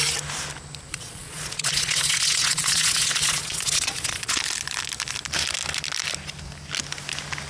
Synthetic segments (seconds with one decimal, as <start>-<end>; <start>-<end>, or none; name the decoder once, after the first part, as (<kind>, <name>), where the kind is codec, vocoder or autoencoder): 0.9-4.4 (vocoder, Vocos)